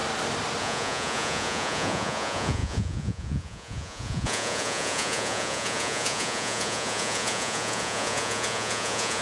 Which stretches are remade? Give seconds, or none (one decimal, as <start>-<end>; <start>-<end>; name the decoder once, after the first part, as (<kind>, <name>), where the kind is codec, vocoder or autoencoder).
0.6-9.2 (vocoder, Vocos)